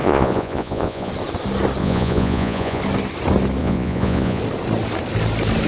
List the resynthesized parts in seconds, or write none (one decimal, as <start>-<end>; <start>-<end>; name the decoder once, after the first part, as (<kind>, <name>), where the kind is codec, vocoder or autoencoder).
0.0-1.1 (vocoder, Vocos); 1.8-2.8; 3.6-4.4